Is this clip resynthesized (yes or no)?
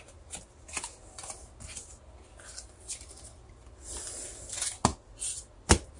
no